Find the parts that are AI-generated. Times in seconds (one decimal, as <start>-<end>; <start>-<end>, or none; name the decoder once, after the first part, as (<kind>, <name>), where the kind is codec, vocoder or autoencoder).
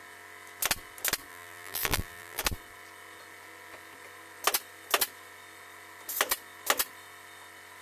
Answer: 1.3-2.4 (vocoder, BigVGAN v2)